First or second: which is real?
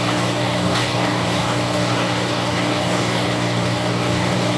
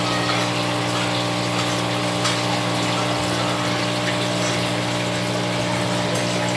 second